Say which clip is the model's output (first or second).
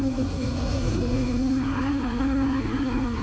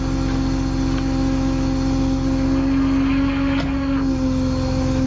first